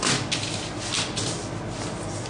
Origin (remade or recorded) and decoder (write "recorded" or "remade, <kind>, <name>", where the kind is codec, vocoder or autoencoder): recorded